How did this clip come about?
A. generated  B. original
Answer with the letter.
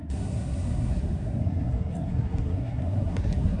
A